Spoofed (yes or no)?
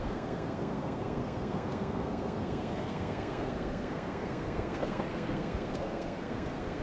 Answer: yes